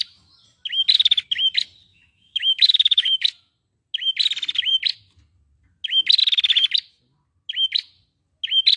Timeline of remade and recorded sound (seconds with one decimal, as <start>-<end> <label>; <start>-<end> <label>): 0.0-1.9 recorded; 1.9-3.5 remade; 3.5-8.8 recorded